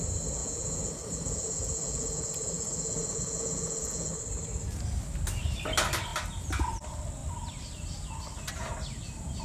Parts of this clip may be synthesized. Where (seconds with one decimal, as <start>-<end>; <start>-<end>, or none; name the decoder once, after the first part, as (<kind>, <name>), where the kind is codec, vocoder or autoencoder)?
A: 0.4-4.1 (vocoder, Vocos)